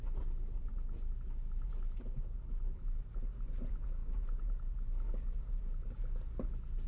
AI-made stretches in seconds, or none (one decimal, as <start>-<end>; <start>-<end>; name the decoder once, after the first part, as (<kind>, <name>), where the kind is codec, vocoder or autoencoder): none

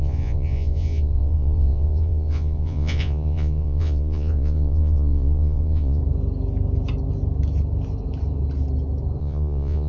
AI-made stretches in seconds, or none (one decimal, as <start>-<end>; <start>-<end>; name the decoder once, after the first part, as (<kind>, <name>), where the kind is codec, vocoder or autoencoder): 0.0-6.0 (vocoder, Vocos); 9.2-9.9

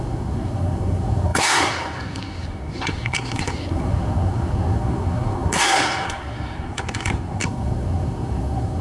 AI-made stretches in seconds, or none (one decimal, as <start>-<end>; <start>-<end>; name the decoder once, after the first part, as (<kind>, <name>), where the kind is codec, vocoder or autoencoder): 0.0-8.8 (codec, SNAC)

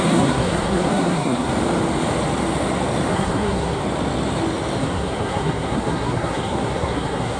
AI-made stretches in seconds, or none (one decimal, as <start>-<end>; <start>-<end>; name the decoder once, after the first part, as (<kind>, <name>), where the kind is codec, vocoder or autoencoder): 0.0-1.5 (codec, SNAC); 3.1-3.8; 4.8-7.4